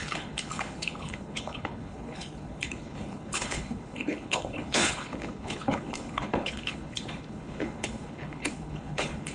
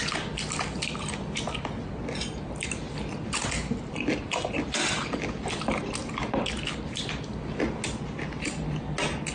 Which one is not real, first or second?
first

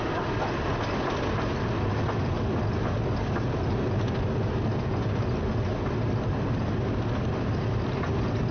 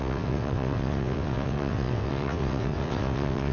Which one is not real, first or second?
second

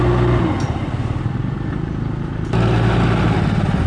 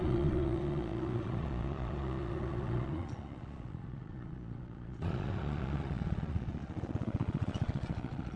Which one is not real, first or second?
second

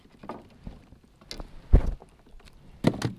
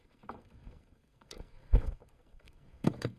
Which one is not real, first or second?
second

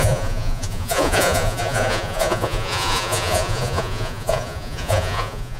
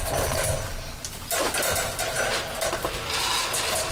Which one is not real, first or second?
first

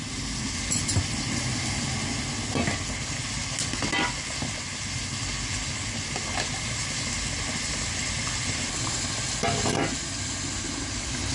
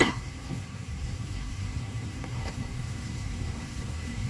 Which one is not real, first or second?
second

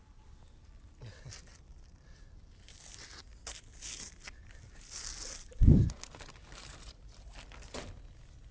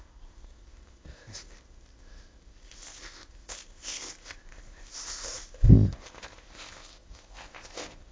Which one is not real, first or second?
second